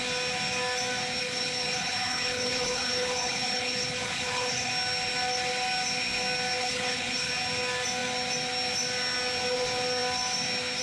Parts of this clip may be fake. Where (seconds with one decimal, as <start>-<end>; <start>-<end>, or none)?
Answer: 1.2-4.7; 6.6-7.3